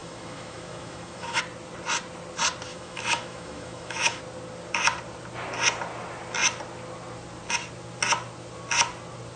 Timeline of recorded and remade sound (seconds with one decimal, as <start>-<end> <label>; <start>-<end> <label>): 0.0-1.4 remade; 1.4-2.7 recorded; 2.7-4.2 remade; 4.2-9.4 recorded